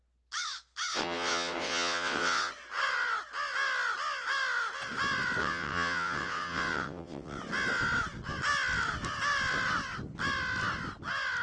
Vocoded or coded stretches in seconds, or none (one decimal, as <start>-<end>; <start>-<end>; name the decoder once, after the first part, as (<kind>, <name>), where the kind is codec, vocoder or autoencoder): 0.9-2.5 (vocoder, WaveNeXt); 5.4-7.4